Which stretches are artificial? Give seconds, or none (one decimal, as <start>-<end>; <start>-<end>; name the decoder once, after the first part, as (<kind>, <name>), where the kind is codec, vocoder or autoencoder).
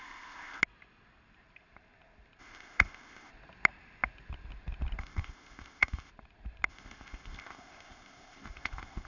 0.0-0.6 (codec, ZipCodec); 2.4-3.3; 5.0-6.1; 6.7-9.1